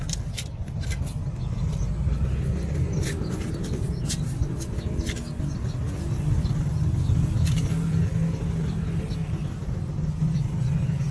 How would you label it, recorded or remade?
recorded